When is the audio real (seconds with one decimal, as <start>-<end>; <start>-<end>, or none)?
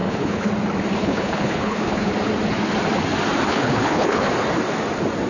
0.5-1.0; 2.1-3.5; 4.3-5.3